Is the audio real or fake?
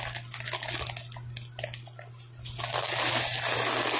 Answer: real